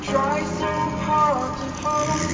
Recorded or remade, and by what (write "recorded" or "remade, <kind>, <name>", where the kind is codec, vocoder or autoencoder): recorded